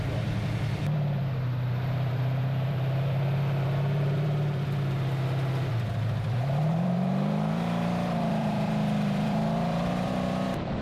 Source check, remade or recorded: remade